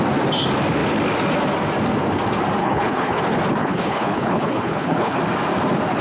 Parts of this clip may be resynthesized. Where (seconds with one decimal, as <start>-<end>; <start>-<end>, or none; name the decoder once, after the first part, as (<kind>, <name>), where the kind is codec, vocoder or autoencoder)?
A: 2.6-3.2 (codec, HILCodec); 3.6-5.2